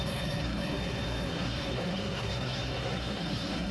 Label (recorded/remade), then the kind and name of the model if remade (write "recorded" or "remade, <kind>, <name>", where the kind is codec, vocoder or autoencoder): remade, codec, SNAC